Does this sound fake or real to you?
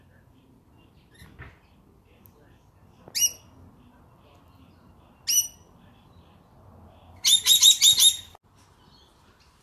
real